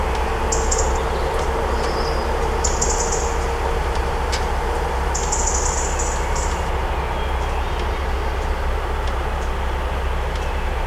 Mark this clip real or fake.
real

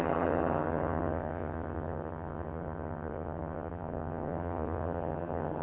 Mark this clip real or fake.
fake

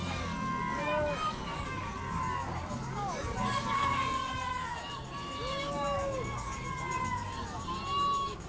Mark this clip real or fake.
fake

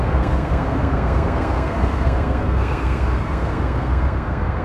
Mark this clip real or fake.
fake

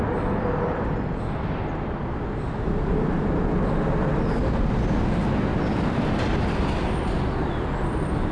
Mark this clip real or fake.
real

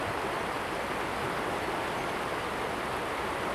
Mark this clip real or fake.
real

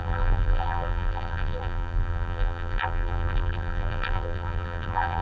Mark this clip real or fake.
fake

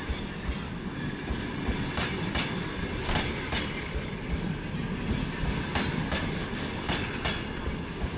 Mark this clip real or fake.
real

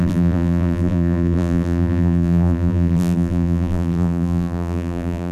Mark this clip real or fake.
fake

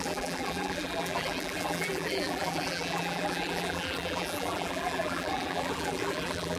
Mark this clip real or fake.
fake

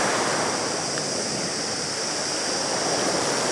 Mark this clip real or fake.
real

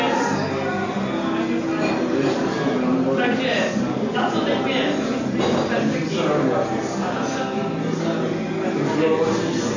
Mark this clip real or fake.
real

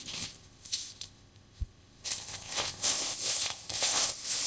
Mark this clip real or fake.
fake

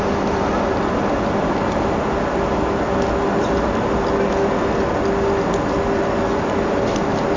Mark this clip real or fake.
real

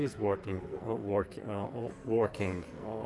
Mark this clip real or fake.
fake